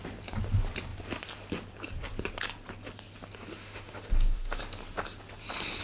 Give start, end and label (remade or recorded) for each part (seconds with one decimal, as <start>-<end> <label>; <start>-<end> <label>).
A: 0.0-3.5 recorded; 3.5-4.6 remade; 4.6-5.8 recorded